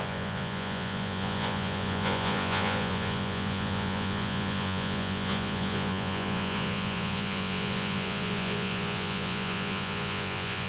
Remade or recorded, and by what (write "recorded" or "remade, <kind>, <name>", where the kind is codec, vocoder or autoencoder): remade, vocoder, Vocos